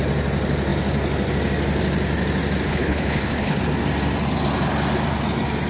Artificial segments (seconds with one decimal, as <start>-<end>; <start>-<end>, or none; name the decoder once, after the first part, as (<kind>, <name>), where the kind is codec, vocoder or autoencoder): 2.7-3.6 (codec, HILCodec)